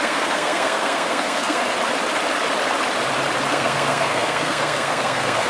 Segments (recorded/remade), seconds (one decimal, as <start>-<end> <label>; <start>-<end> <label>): 0.0-1.6 remade; 1.6-3.5 recorded; 3.5-5.5 remade